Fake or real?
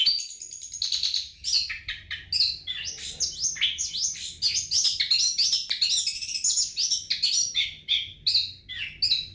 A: real